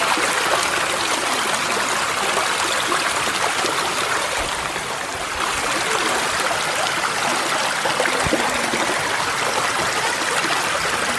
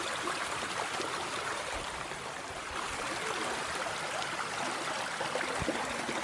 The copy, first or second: second